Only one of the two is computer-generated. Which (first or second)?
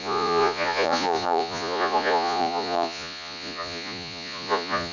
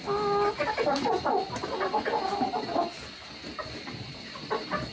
first